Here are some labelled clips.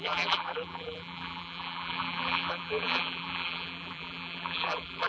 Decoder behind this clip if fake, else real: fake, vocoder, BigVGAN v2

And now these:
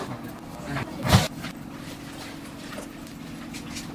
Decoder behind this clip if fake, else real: real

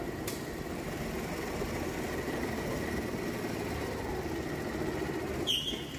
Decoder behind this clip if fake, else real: real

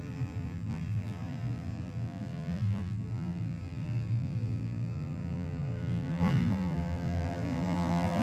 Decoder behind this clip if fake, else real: fake, vocoder, BigVGAN v2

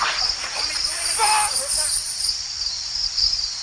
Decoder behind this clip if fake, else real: real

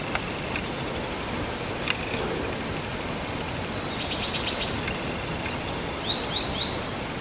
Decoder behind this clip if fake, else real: real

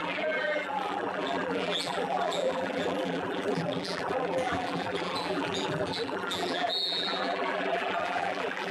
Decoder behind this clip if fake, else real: fake, vocoder, BigVGAN v2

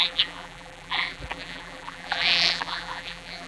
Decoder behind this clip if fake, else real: fake, vocoder, BigVGAN v2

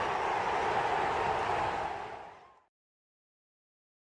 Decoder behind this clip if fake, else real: real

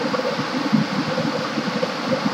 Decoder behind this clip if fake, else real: real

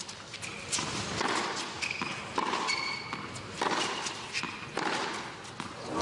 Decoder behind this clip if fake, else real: real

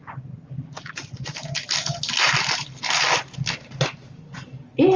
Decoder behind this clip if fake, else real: real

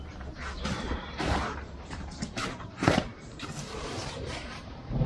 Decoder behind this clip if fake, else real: fake, vocoder, BigVGAN v2